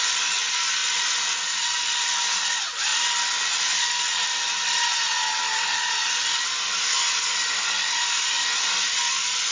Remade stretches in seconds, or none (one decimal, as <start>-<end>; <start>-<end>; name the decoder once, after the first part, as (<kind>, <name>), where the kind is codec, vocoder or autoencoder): none

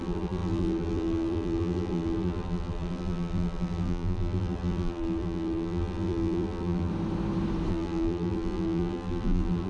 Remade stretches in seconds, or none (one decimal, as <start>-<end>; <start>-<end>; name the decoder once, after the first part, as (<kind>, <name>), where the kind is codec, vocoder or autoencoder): 0.0-6.9 (vocoder, BigVGAN v2); 7.7-9.7

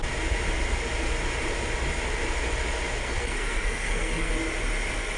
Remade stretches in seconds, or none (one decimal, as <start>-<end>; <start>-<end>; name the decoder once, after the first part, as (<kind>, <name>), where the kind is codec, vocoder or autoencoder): 3.0-4.3 (codec, SNAC)

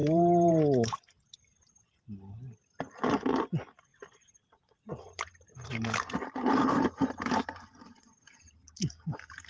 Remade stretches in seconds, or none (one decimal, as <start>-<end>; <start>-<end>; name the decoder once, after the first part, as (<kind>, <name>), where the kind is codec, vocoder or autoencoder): 0.0-1.8 (vocoder, BigVGAN v2); 3.9-8.8

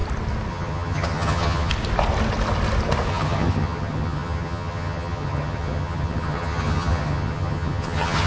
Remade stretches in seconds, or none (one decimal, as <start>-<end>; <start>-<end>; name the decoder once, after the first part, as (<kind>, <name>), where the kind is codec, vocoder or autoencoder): 0.5-1.7 (vocoder, HiFi-GAN); 3.1-8.3

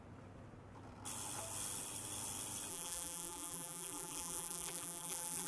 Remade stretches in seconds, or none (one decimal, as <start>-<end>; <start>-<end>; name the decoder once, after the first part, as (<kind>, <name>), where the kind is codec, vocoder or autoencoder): 2.7-5.5 (vocoder, BigVGAN v2)

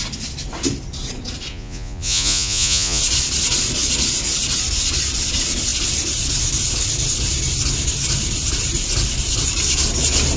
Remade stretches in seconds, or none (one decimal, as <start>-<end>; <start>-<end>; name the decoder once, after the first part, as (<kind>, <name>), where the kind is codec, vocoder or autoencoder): 1.5-3.0 (vocoder, Vocos)